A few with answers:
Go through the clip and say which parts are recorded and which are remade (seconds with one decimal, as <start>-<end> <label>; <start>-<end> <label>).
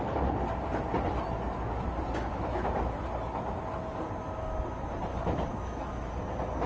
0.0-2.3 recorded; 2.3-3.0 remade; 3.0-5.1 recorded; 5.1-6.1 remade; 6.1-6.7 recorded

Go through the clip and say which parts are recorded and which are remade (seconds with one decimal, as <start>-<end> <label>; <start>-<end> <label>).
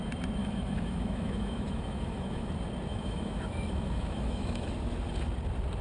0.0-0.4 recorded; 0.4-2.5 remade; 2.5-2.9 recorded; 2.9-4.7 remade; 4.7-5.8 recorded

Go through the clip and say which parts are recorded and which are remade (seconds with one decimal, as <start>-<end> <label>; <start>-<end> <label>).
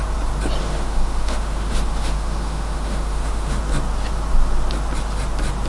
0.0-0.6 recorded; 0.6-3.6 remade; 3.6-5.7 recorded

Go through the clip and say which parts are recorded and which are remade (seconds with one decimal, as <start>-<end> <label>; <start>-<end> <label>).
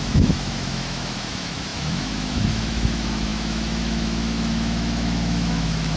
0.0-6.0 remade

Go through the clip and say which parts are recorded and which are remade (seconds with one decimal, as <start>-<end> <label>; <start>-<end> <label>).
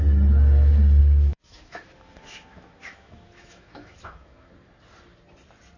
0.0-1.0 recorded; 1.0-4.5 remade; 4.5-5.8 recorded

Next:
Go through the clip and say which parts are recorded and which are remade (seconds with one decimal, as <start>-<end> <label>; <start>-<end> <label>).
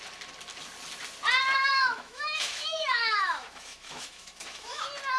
0.0-1.7 recorded; 1.7-4.8 remade; 4.8-5.2 recorded